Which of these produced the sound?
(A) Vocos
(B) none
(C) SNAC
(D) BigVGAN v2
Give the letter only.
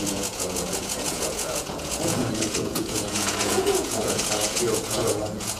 A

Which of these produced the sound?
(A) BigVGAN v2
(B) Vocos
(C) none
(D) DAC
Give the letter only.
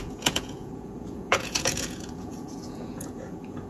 B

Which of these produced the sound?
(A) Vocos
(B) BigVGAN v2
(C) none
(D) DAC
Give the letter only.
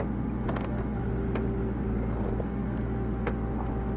C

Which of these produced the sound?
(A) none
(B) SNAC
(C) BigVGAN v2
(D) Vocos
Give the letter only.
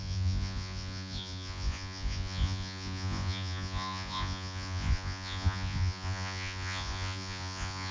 D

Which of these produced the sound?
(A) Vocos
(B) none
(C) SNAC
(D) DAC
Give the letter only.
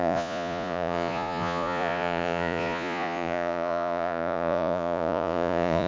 A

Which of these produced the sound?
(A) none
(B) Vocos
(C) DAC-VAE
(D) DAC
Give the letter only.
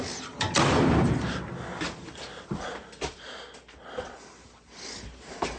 A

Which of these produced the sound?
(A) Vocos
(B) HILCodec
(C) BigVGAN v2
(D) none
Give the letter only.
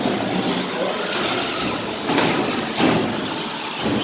D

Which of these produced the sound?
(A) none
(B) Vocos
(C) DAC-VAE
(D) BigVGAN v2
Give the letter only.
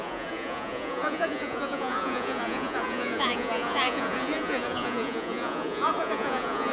B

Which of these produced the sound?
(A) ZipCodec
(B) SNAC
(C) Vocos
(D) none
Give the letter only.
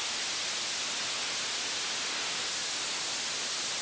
D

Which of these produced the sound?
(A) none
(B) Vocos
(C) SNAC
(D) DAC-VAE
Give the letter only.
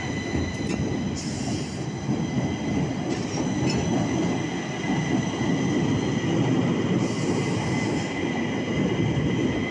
A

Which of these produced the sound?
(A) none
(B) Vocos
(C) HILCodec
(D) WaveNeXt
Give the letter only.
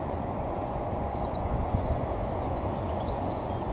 B